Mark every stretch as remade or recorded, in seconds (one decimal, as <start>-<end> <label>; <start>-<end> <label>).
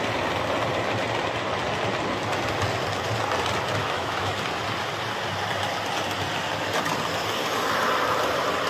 0.0-3.8 recorded; 3.8-4.3 remade; 4.3-8.7 recorded